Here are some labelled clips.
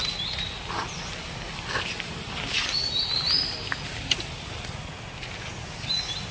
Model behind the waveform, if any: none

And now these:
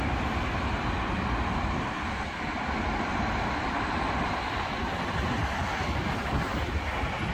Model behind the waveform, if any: none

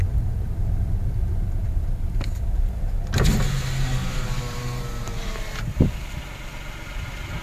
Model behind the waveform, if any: none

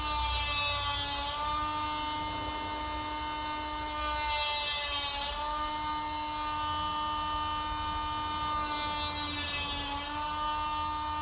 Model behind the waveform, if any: none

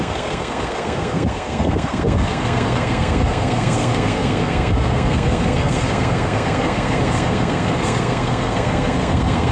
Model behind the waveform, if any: codec, SNAC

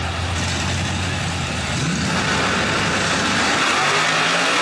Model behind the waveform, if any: none